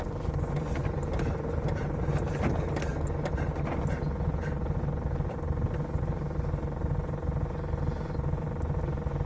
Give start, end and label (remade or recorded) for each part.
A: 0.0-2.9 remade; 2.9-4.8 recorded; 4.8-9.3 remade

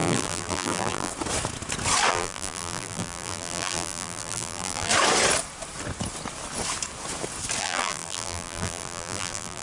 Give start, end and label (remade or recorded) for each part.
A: 0.0-1.1 remade; 1.1-2.1 recorded; 2.1-4.9 remade; 4.9-7.6 recorded; 7.6-9.6 remade

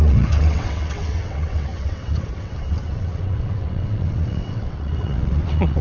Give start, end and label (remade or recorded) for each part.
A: 0.0-5.8 remade

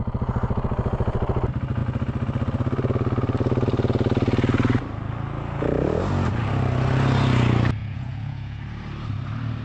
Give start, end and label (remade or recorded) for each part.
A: 0.0-7.8 recorded; 7.8-8.6 remade; 8.6-9.6 recorded

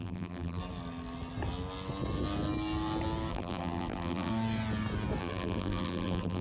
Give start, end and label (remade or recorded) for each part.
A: 0.0-0.6 remade; 0.6-3.3 recorded; 3.3-4.3 remade; 4.3-5.2 recorded; 5.2-6.4 remade